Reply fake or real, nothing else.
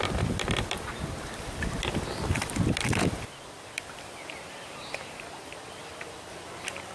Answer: fake